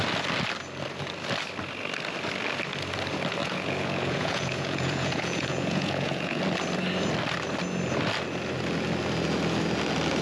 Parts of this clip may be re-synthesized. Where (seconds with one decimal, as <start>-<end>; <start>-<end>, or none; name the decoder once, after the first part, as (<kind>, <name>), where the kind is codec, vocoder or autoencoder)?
3.4-6.4 (vocoder, Vocos)

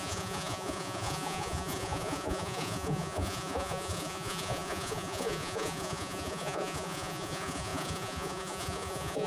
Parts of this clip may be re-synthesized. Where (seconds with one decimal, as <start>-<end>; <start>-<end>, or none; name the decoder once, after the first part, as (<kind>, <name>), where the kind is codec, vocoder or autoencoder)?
0.0-9.3 (vocoder, Vocos)

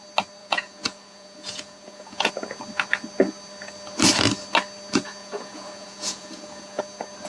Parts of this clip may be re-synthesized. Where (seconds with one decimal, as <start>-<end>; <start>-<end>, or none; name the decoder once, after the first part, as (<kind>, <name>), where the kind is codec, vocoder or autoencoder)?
0.4-2.3 (vocoder, Vocos); 5.2-6.8

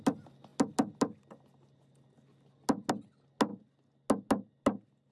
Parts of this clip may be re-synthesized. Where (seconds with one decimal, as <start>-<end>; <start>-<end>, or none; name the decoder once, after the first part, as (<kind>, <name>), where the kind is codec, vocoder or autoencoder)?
none

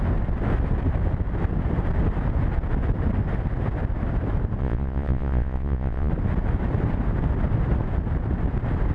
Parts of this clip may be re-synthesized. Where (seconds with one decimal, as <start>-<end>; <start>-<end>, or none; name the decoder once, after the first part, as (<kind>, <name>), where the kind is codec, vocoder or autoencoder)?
4.6-6.1 (vocoder, Vocos)

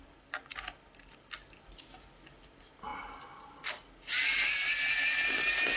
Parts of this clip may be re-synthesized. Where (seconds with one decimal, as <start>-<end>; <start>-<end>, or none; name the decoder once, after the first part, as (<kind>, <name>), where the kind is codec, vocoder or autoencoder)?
none

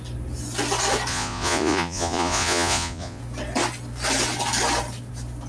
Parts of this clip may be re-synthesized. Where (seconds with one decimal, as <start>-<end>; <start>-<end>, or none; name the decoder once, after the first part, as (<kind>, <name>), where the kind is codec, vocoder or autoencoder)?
1.1-3.2 (vocoder, Vocos)